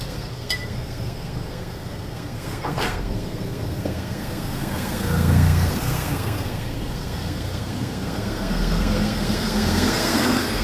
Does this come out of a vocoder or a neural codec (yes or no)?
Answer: yes